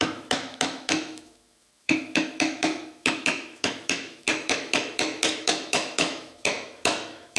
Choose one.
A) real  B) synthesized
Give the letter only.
B